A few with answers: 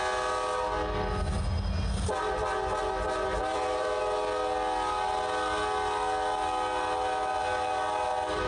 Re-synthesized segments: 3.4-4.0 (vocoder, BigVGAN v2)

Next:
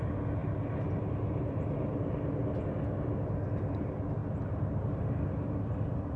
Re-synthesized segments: 4.2-4.9 (vocoder, BigVGAN v2)

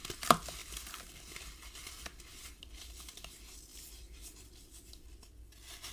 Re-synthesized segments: 0.6-2.2 (vocoder, BigVGAN v2); 3.7-4.7

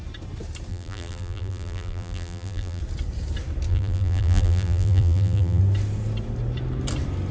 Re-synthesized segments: 0.7-2.8 (vocoder, BigVGAN v2); 3.7-5.6

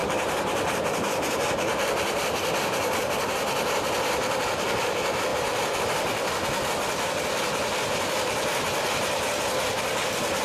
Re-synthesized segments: 0.0-1.3 (vocoder, BigVGAN v2)

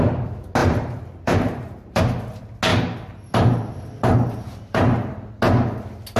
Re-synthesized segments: 0.6-2.0 (vocoder, BigVGAN v2); 2.7-5.3

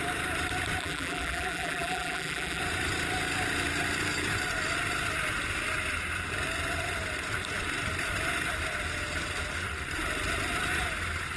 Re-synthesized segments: 0.8-2.6 (vocoder, BigVGAN v2)